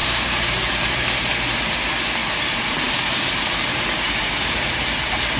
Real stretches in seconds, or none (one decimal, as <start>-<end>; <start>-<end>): 1.3-2.2